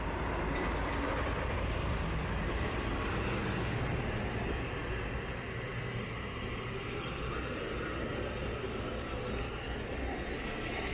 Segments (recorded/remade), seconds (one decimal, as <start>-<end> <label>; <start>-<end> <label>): 0.0-10.9 recorded